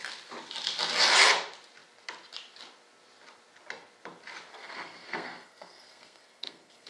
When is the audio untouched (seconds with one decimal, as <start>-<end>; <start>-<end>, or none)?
0.0-4.5

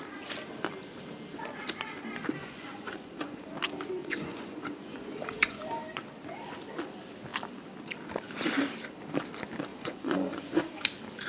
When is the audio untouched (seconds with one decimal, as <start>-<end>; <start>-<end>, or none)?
0.0-2.4; 3.5-4.0; 5.6-9.7; 10.7-11.3